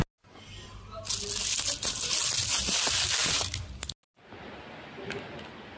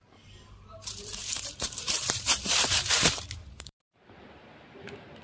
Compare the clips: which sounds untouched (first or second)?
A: first